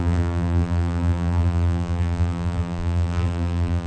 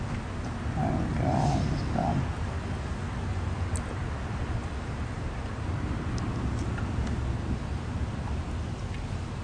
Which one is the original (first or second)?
second